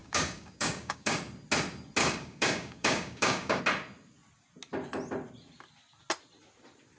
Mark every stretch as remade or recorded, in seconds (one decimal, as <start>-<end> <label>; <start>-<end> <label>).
0.0-1.2 remade; 1.2-2.0 recorded; 2.0-3.6 remade; 3.6-7.0 recorded